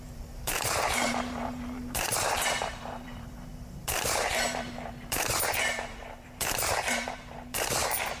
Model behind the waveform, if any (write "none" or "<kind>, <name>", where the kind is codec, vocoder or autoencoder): vocoder, BigVGAN v2